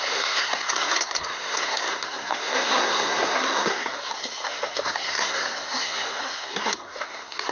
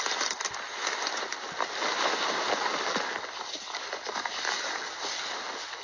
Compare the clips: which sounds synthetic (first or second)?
first